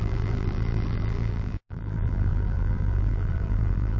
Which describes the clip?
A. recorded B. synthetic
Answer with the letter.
B